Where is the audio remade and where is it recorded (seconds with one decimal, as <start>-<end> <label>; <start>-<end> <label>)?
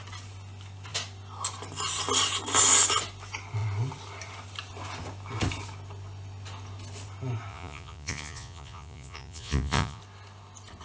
0.0-7.5 recorded; 7.5-10.0 remade; 10.0-10.8 recorded